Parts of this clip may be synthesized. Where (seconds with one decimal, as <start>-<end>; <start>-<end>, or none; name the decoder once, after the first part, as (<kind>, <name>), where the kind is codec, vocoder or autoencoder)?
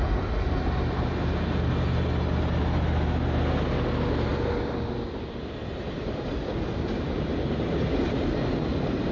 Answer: none